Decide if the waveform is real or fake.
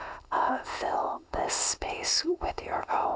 fake